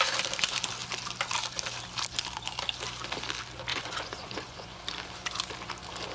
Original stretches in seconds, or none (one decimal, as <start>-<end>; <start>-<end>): 0.0-3.7; 4.8-6.1